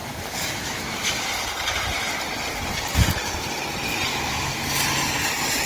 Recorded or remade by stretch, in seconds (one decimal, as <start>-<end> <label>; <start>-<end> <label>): 0.0-1.3 remade; 1.3-4.1 recorded; 4.1-4.6 remade; 4.6-5.7 recorded